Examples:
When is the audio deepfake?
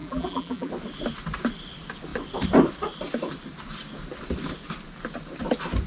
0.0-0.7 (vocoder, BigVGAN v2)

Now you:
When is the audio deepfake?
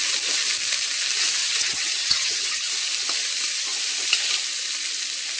1.4-2.7 (vocoder, HiFi-GAN)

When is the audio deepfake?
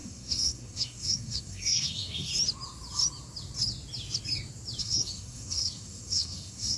0.0-2.3 (codec, SNAC); 4.8-6.8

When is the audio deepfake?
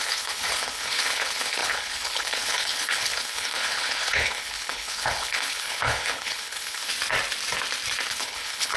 0.0-6.9 (codec, HILCodec); 8.1-8.8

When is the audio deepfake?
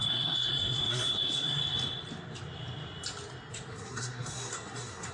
0.0-1.6 (codec, SNAC); 3.7-5.1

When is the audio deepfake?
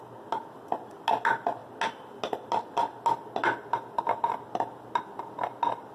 none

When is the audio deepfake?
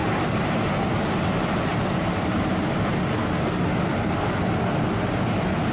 0.0-0.5 (vocoder, BigVGAN v2); 1.7-3.1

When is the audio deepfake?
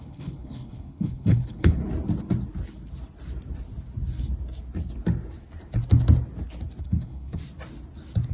0.0-1.8 (codec, HILCodec); 6.8-7.4